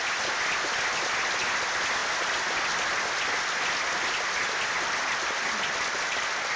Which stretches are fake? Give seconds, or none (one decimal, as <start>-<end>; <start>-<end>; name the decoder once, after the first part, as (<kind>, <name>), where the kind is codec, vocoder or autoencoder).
none